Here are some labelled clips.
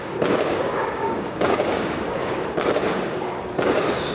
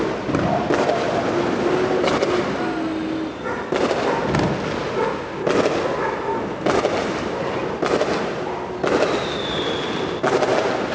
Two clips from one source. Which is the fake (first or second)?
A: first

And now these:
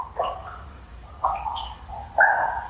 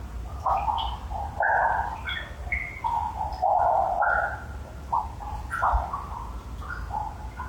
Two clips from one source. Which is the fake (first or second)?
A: first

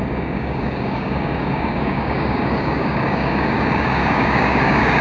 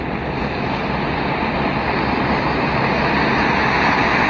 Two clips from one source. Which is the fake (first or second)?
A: first